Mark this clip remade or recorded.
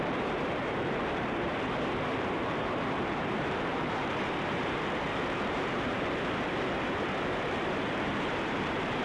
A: remade